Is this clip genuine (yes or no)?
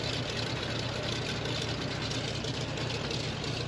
yes